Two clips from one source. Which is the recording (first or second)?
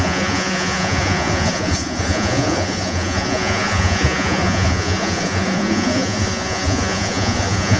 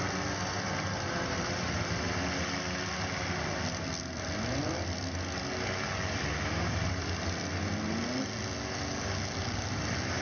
second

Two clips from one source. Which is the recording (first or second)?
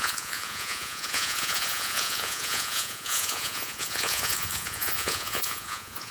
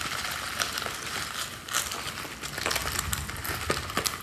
second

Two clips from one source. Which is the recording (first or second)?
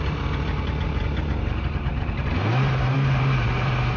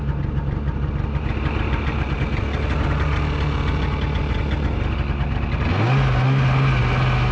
second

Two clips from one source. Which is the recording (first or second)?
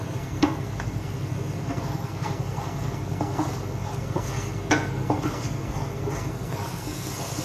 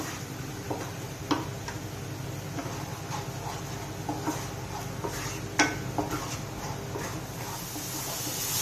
second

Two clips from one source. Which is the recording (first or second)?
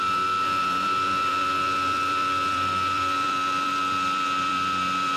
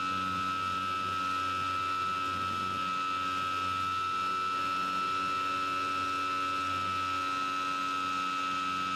second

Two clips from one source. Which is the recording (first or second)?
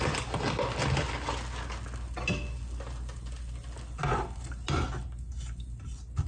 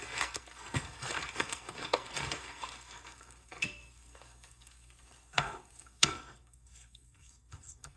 first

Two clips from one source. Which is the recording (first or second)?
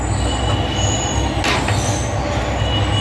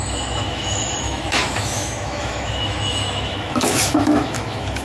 first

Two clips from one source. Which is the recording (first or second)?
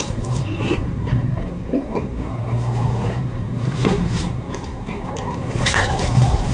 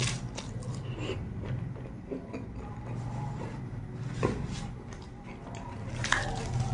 second